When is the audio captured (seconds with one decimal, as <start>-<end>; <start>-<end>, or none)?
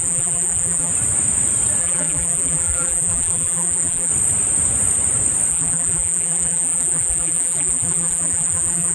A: 0.9-1.8; 4.1-5.5